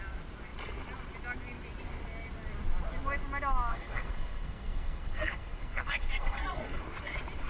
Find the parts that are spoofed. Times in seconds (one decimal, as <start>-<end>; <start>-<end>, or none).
3.7-6.8